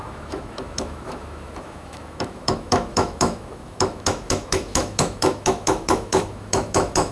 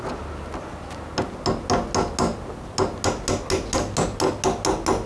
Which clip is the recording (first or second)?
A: second